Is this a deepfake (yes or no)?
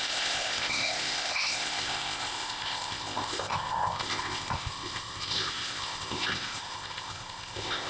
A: yes